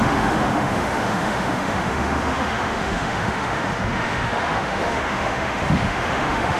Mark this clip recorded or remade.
remade